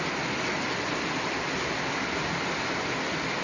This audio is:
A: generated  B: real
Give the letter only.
B